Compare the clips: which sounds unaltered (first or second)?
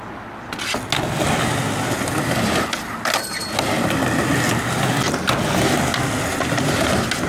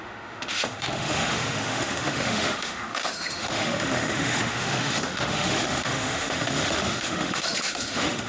first